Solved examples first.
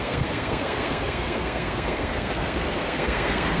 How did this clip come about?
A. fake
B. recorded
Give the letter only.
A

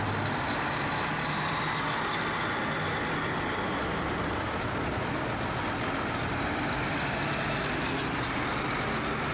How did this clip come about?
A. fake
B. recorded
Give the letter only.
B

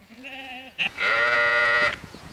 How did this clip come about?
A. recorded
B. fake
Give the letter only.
B